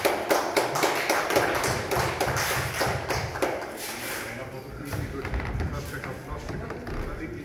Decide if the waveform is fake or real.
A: real